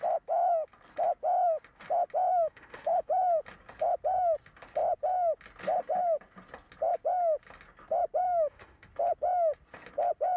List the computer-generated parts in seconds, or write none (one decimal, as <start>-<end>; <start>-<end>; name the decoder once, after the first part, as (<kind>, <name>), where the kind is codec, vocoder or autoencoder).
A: 2.3-3.2 (autoencoder, DAC-VAE); 8.2-8.9